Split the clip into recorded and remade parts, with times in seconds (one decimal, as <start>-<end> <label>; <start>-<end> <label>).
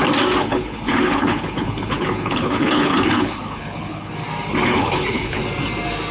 0.0-0.4 recorded; 0.4-4.1 remade; 4.1-4.7 recorded; 4.7-5.4 remade; 5.4-6.1 recorded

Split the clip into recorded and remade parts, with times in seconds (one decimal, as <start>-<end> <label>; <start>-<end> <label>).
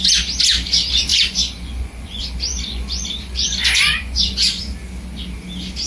0.0-1.1 recorded; 1.1-4.6 remade; 4.6-5.9 recorded